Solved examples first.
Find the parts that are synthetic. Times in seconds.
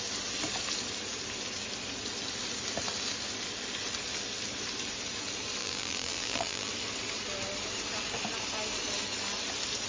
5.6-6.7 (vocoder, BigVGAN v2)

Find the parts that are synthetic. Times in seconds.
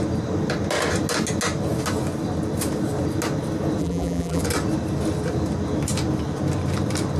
3.8-4.4 (vocoder, BigVGAN v2)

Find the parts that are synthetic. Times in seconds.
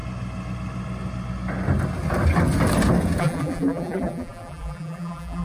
3.2-5.4 (vocoder, BigVGAN v2)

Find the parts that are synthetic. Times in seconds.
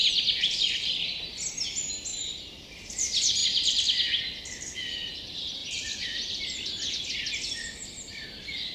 0.0-1.2 (vocoder, BigVGAN v2); 2.1-2.7; 3.4-4.2; 5.6-6.9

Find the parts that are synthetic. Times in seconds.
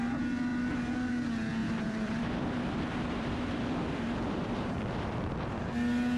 1.6-5.3 (vocoder, BigVGAN v2)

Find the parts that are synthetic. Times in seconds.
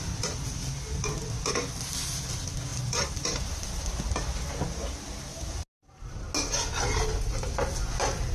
none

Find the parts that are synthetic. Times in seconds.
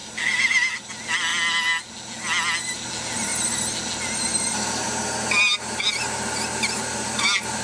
0.0-0.9 (vocoder, BigVGAN v2)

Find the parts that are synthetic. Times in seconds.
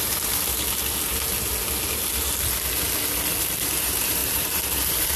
0.0-0.5 (vocoder, BigVGAN v2); 3.6-5.2